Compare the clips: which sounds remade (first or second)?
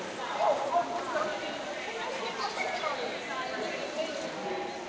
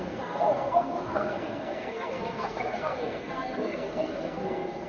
second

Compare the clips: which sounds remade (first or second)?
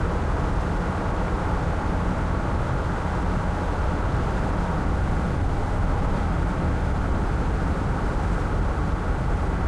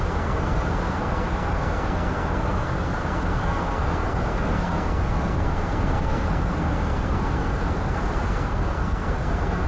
second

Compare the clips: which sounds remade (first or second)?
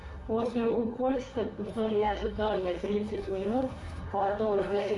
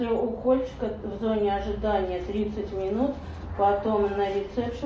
first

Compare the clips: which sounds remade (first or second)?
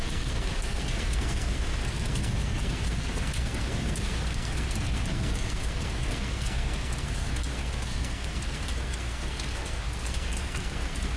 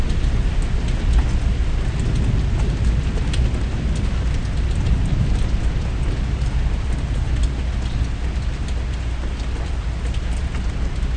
first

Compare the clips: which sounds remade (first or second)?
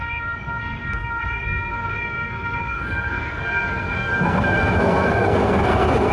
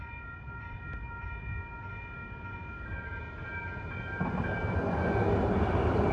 first